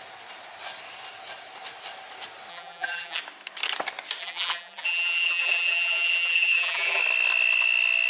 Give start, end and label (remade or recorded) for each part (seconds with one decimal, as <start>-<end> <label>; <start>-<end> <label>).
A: 0.0-2.5 recorded; 2.5-3.2 remade; 3.2-4.2 recorded; 4.2-7.0 remade; 7.0-8.1 recorded